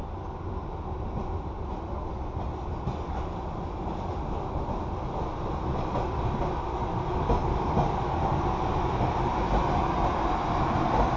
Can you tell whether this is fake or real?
real